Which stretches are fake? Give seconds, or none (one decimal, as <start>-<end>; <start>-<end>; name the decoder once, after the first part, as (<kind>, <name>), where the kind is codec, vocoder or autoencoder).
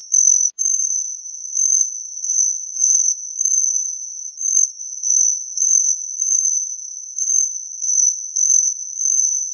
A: 0.9-4.3 (codec, SNAC); 4.8-9.5